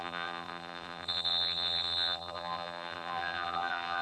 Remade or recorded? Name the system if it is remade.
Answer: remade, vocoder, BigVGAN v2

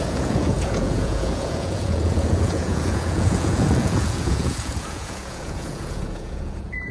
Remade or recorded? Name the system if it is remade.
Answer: remade, vocoder, Vocos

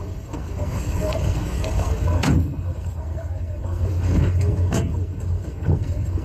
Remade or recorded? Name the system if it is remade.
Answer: remade, codec, SNAC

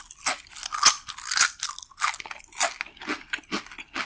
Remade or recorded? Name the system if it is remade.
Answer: recorded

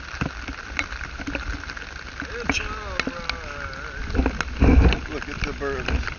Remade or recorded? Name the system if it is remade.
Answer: recorded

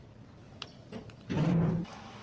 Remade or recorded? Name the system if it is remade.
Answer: recorded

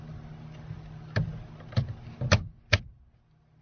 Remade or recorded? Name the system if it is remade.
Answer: recorded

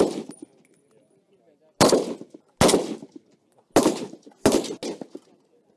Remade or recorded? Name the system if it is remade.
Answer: recorded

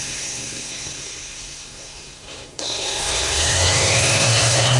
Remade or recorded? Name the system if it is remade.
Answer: remade, codec, SNAC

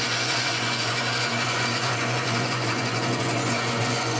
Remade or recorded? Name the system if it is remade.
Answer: remade, vocoder, Vocos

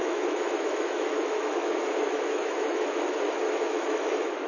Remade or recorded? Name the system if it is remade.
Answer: remade, autoencoder, DAC-VAE